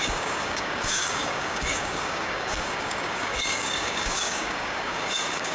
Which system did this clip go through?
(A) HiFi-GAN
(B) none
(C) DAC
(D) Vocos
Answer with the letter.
C